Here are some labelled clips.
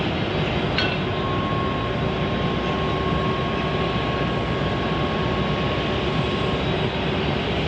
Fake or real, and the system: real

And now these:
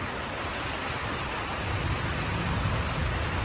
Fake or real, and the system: real